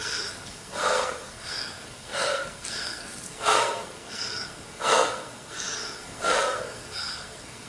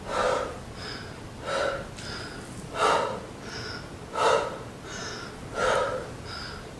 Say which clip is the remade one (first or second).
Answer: first